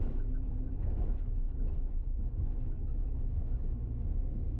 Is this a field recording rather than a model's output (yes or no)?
yes